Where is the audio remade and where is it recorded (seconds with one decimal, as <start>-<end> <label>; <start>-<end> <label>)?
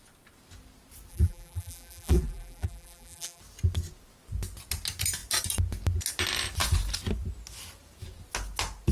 0.0-1.1 recorded; 1.1-3.4 remade; 3.4-8.9 recorded